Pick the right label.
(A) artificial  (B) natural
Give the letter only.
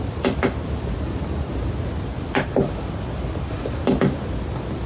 B